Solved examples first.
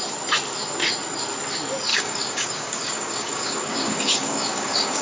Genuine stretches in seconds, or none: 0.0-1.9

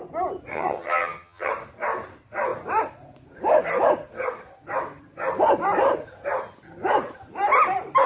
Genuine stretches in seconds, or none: 0.0-0.5; 1.5-8.1

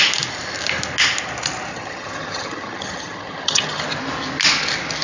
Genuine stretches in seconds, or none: 0.0-1.7; 3.8-5.0

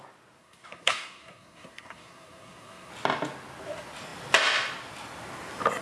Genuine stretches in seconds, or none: 0.0-0.4; 2.9-5.8

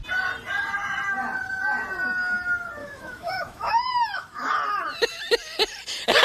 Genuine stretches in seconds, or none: 0.0-2.8; 4.5-6.2